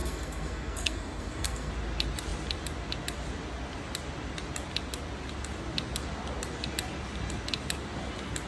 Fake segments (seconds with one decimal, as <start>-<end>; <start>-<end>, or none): 0.0-1.7

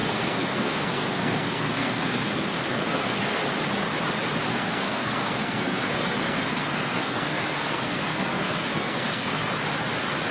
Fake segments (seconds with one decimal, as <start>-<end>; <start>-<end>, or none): 0.0-3.4; 4.5-9.4

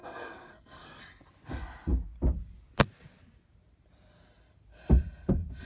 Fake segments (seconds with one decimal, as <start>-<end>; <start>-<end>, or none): 0.0-1.0

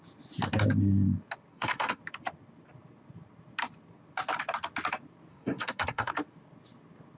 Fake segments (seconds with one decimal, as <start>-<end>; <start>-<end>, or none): 1.5-2.0; 5.3-6.1

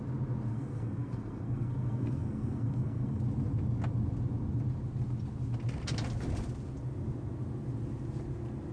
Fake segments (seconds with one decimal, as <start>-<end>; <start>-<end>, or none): 0.5-3.2

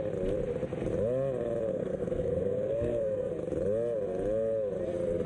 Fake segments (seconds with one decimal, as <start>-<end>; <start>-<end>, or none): 1.7-3.3